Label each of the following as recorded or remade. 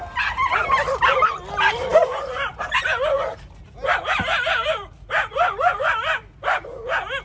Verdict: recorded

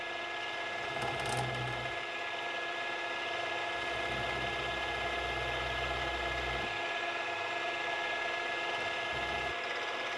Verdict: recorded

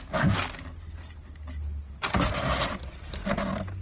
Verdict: recorded